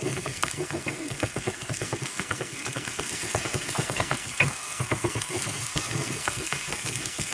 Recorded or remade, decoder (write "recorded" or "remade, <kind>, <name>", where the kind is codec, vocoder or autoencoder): remade, codec, SNAC